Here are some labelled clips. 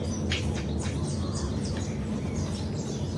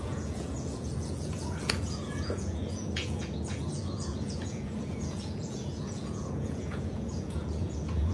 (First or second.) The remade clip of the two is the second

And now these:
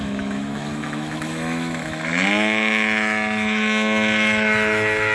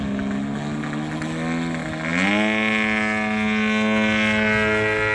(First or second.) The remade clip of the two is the first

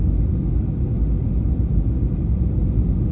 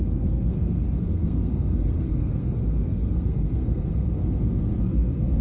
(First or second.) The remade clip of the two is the second